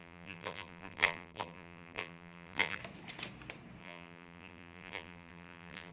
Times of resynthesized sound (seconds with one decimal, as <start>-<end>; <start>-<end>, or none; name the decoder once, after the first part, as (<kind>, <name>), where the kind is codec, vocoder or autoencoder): 0.0-2.8 (vocoder, BigVGAN v2); 3.8-5.9